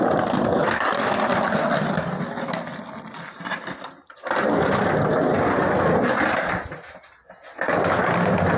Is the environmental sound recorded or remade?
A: recorded